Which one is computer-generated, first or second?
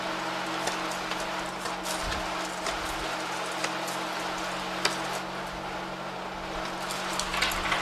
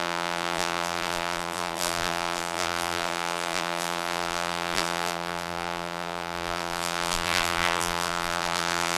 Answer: second